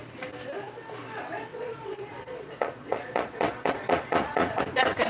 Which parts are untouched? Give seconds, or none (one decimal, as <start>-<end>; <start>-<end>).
0.0-1.5; 4.6-5.1